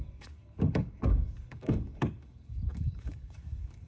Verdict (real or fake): fake